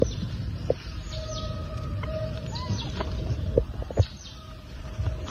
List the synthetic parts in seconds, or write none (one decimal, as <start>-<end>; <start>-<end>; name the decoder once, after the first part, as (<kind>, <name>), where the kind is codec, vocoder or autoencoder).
none